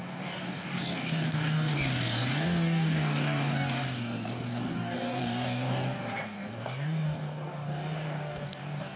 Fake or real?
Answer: fake